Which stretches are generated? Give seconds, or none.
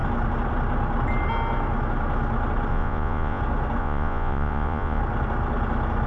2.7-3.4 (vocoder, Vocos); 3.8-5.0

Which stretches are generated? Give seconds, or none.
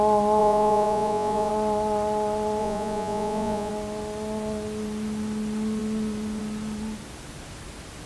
0.4-1.5 (vocoder, Vocos); 2.6-3.7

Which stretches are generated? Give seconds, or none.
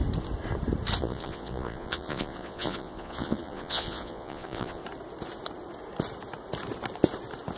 1.0-4.8 (vocoder, Vocos)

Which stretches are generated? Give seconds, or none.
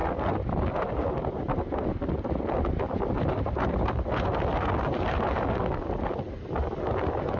none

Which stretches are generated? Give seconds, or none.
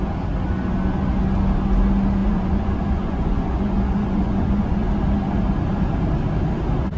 2.2-4.9 (vocoder, Vocos)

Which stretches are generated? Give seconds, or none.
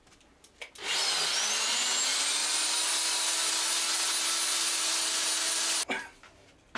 none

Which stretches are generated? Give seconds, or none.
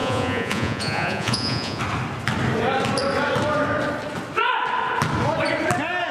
0.0-1.8 (vocoder, Vocos)